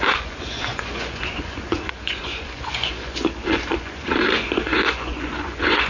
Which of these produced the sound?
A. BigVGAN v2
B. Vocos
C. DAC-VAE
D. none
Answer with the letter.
B